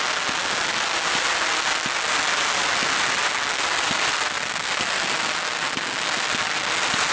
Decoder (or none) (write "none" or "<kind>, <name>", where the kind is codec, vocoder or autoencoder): none